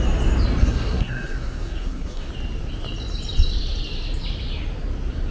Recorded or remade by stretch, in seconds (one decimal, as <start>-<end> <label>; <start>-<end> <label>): 0.0-0.6 recorded; 0.6-2.3 remade; 2.3-5.3 recorded